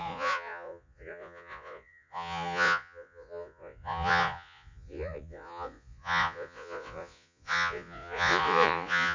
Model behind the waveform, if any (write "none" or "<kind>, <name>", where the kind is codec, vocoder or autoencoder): vocoder, Vocos